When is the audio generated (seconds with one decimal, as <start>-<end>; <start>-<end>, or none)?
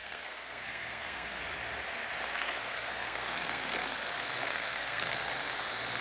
0.0-1.4; 2.3-5.3